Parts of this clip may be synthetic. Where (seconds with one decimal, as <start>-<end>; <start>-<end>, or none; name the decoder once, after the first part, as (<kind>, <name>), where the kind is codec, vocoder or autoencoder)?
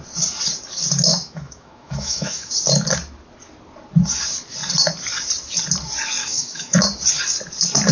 1.1-2.5 (autoencoder, DAC-VAE); 6.2-6.8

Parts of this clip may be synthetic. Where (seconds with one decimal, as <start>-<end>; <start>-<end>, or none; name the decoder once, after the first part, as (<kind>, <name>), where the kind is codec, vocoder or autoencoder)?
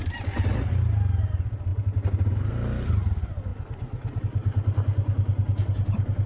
none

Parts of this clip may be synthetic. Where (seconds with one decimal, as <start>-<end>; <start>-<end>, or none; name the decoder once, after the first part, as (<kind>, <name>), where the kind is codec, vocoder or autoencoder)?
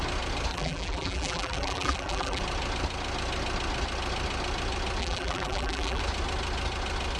0.5-2.4 (vocoder, BigVGAN v2); 5.0-6.0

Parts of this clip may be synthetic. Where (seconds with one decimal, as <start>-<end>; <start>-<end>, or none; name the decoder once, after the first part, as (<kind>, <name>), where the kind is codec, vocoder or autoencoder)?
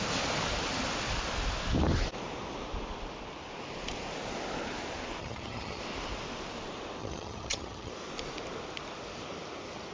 5.2-5.8 (vocoder, HiFi-GAN); 7.0-7.9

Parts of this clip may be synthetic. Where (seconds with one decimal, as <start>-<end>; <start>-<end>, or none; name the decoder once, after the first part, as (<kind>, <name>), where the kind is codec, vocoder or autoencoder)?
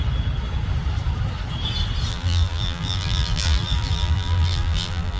2.1-5.2 (vocoder, BigVGAN v2)